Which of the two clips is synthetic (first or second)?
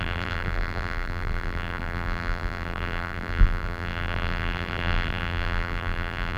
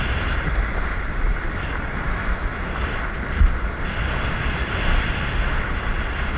first